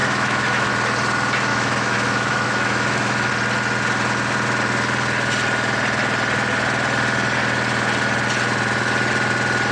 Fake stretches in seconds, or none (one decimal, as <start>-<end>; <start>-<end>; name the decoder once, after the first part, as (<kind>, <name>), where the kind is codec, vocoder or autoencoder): 0.0-0.7 (autoencoder, DAC-VAE); 1.5-3.3